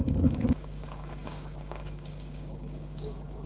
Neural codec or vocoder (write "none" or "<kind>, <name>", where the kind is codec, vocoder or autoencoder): codec, DAC